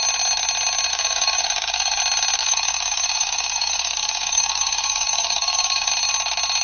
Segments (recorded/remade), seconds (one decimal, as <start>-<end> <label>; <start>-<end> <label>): 0.0-0.9 recorded; 0.9-2.0 remade; 2.0-2.4 recorded; 2.4-5.9 remade; 5.9-6.6 recorded

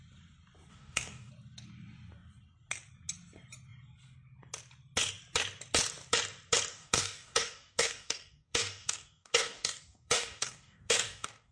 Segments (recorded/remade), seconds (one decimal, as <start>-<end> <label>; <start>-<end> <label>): 0.0-0.7 recorded; 0.7-1.3 remade; 1.3-6.7 recorded; 6.7-11.5 remade

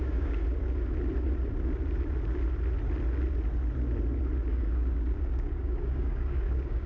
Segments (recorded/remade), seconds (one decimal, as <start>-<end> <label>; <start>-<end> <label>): 0.0-0.4 remade; 0.4-4.5 recorded; 4.5-6.9 remade

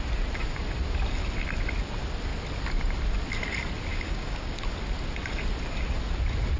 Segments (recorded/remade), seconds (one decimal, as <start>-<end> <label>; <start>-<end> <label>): 0.0-3.9 recorded; 3.9-4.6 remade; 4.6-6.6 recorded

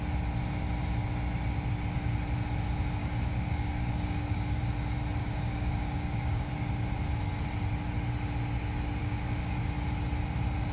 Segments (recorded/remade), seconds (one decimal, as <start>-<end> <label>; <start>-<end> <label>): 0.0-3.0 recorded; 3.0-4.6 remade; 4.6-5.2 recorded; 5.2-6.5 remade; 6.5-9.0 recorded; 9.0-9.6 remade; 9.6-10.7 recorded

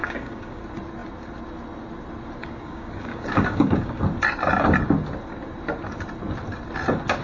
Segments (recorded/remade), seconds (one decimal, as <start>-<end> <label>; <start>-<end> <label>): 0.0-0.6 remade; 0.6-2.4 recorded; 2.4-4.0 remade; 4.0-7.2 recorded

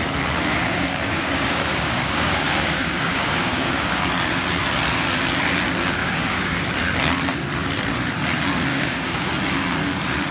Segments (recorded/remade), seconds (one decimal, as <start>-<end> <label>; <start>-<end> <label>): 0.0-0.5 recorded; 0.5-4.0 remade; 4.0-6.0 recorded; 6.0-6.6 remade; 6.6-8.7 recorded; 8.7-9.3 remade; 9.3-10.3 recorded